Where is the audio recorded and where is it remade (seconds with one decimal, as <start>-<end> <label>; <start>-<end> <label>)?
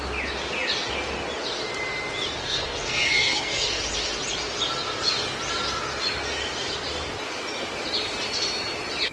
0.0-2.4 recorded; 2.4-3.8 remade; 3.8-9.1 recorded